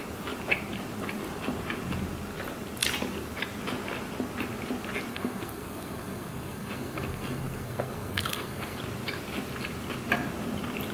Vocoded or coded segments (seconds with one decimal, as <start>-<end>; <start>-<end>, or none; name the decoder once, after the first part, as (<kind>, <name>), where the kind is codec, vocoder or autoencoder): 5.1-8.8 (codec, SNAC)

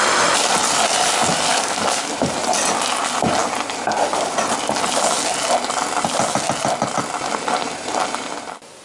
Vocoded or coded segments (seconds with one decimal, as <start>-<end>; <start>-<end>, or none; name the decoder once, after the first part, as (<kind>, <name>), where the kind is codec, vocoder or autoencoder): 1.5-2.1 (codec, DAC)

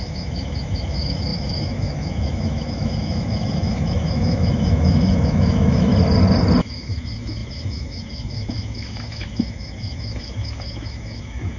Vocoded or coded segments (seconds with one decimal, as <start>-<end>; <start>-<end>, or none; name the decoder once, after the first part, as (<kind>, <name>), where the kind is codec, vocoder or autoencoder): 0.0-5.9 (autoencoder, DAC-VAE); 6.6-11.6

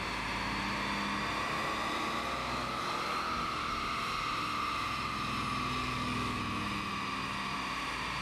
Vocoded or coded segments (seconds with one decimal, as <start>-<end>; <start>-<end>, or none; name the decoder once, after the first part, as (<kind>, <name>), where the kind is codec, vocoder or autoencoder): 2.4-3.7 (codec, DAC); 5.8-6.4

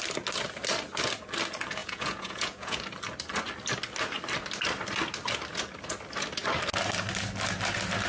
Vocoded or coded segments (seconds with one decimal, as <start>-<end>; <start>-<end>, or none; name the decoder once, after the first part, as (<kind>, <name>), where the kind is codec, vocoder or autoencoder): 1.8-2.8 (vocoder, Vocos)

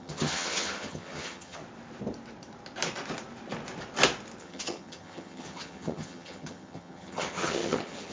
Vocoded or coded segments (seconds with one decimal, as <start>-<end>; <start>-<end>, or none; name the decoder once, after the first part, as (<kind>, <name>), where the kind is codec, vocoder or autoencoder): 0.0-1.6 (vocoder, HiFi-GAN); 4.4-8.1

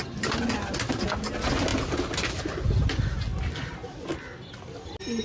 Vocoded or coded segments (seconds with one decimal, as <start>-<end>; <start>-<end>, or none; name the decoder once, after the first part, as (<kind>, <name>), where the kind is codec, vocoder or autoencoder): none